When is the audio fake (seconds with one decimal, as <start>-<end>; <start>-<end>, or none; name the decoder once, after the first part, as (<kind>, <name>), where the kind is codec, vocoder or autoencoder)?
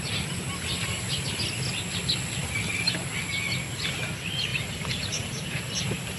4.5-6.2 (vocoder, BigVGAN v2)